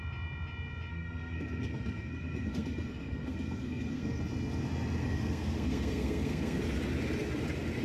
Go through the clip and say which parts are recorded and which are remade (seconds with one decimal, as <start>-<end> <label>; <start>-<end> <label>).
0.0-0.9 recorded; 0.9-4.2 remade; 4.2-5.0 recorded; 5.0-6.6 remade; 6.6-7.8 recorded